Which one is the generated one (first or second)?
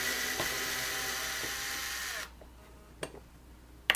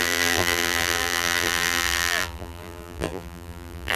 second